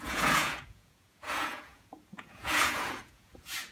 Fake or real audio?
fake